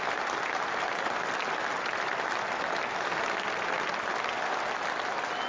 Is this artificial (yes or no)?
no